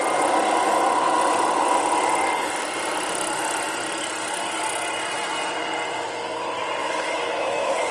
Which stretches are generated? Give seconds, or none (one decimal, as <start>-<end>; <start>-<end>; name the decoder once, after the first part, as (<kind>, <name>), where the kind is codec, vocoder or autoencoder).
6.8-7.9 (autoencoder, DAC-VAE)